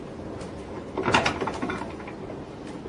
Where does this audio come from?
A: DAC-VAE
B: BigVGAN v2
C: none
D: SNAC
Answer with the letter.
C